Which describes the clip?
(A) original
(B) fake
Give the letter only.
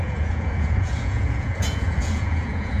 B